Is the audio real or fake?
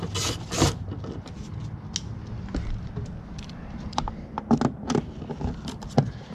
real